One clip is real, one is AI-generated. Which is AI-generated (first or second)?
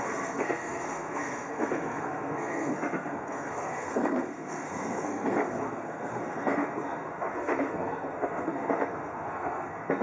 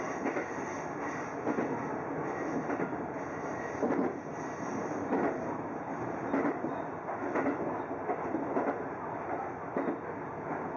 first